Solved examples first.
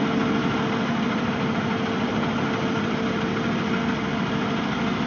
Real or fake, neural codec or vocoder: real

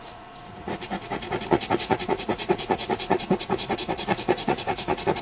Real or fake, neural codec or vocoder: fake, vocoder, Vocos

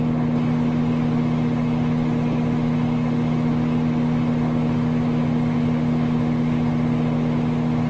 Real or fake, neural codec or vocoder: real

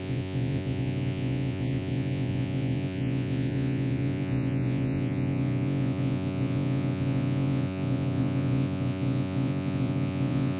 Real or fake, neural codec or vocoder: fake, vocoder, Vocos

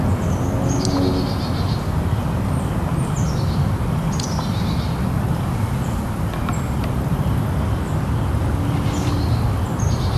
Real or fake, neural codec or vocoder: real